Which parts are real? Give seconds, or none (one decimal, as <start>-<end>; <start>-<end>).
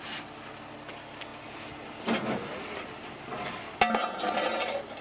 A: 0.0-5.0